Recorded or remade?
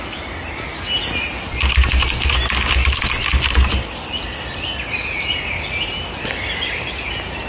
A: recorded